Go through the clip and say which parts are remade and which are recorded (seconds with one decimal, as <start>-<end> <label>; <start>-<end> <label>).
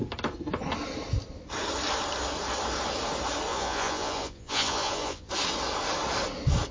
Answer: 0.0-3.5 recorded; 3.5-5.3 remade; 5.3-6.7 recorded